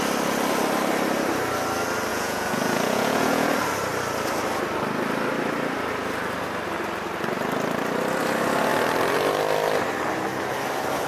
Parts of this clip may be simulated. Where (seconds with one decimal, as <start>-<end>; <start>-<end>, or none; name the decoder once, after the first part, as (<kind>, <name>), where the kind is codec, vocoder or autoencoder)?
2.1-3.5 (vocoder, Vocos)